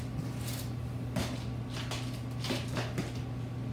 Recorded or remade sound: recorded